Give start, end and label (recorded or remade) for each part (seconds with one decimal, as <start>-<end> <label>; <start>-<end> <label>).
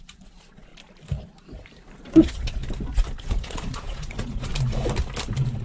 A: 0.0-0.7 remade; 0.7-2.0 recorded; 2.0-2.6 remade; 2.6-3.2 recorded; 3.2-4.5 remade; 4.5-5.6 recorded